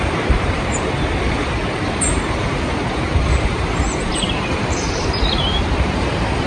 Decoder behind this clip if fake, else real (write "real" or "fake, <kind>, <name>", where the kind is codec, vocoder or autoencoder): fake, vocoder, BigVGAN v2